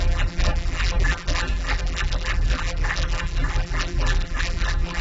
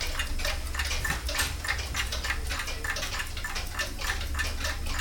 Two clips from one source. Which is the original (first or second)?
second